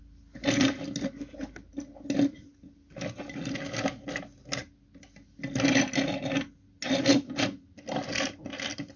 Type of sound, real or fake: real